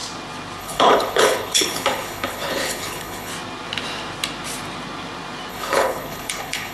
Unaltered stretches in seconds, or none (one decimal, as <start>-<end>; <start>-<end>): 0.0-0.6; 3.3-5.5